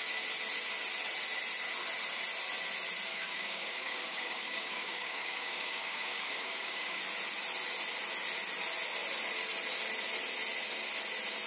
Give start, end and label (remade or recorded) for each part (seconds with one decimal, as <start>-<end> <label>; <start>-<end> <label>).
0.0-3.1 recorded; 3.1-7.0 remade; 7.0-11.5 recorded